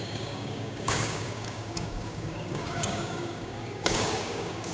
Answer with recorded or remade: remade